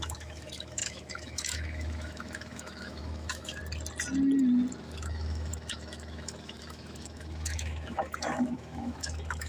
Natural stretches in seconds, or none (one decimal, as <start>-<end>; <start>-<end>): 3.6-4.8